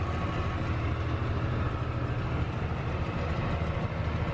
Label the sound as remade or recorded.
recorded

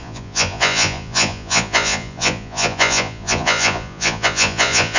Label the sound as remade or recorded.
remade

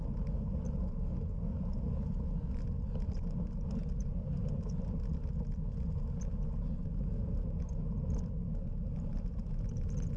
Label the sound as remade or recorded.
recorded